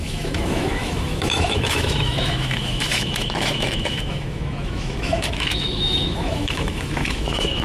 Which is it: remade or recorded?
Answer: remade